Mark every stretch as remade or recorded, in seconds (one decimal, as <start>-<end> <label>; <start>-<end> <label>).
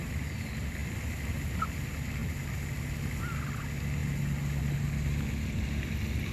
0.0-6.3 recorded